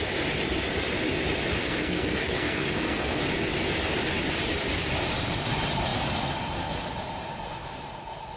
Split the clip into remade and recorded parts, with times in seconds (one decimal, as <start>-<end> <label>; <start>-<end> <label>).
0.0-1.6 recorded; 1.6-3.2 remade; 3.2-8.4 recorded